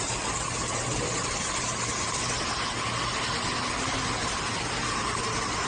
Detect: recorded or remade recorded